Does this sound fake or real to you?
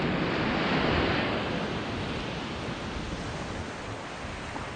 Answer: real